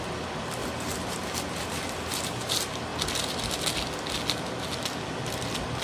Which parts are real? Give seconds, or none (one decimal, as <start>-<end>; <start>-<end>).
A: 0.0-5.8